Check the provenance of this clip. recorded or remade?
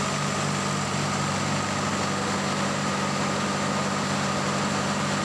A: recorded